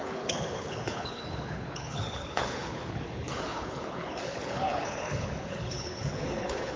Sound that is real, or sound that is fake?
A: fake